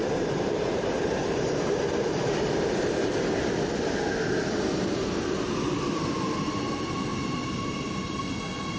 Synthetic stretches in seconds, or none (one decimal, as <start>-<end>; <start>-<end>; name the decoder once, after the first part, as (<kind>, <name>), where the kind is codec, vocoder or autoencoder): 0.0-2.5 (vocoder, BigVGAN v2); 7.1-8.2